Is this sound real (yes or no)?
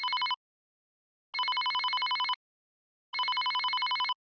yes